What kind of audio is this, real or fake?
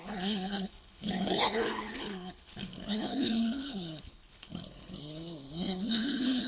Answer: fake